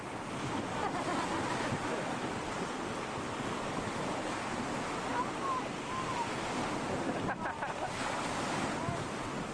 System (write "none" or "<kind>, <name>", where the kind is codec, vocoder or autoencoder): none